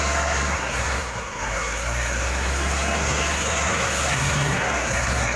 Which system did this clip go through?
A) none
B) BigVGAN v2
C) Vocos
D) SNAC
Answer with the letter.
D